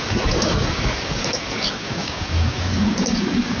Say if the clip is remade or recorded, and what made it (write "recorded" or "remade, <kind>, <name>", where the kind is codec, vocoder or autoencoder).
remade, codec, DAC